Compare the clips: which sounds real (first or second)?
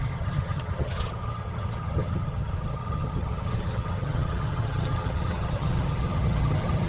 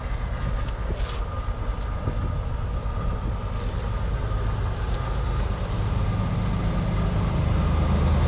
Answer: second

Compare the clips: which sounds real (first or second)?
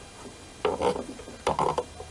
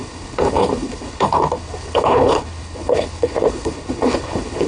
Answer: first